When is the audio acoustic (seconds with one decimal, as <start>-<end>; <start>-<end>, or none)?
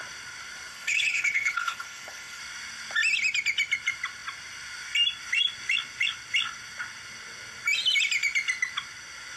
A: 0.0-0.7; 2.4-9.4